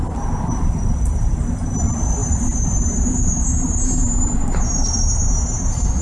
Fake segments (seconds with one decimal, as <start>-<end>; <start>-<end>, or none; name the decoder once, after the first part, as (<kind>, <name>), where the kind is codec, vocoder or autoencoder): 2.2-6.0 (vocoder, BigVGAN v2)